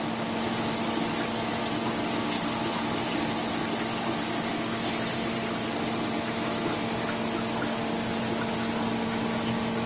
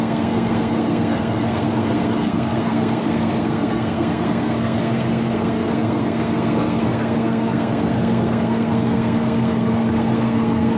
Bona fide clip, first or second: first